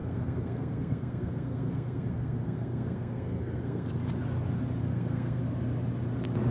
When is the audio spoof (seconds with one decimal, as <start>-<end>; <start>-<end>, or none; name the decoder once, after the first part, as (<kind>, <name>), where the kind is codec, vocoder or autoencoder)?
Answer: 0.0-3.9 (codec, SNAC); 4.8-5.4